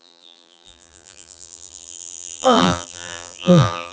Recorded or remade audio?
remade